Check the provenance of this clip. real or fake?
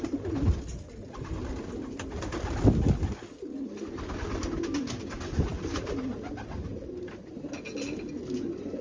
real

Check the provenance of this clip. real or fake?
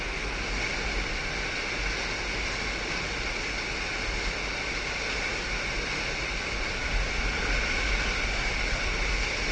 real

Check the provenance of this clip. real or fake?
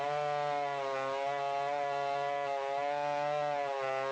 real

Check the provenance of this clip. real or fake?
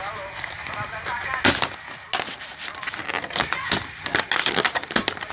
real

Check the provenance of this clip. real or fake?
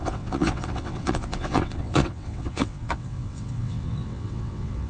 fake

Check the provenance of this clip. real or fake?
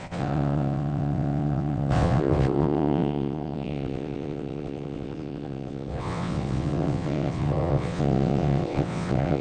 fake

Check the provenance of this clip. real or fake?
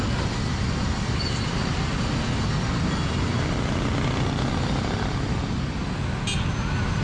real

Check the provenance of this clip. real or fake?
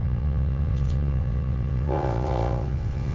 fake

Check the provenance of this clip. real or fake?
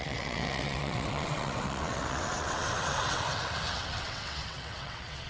fake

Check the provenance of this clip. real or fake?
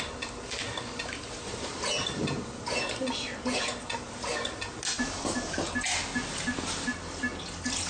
real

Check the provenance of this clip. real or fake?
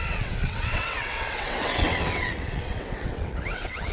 fake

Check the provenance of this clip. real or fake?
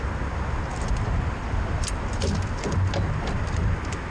real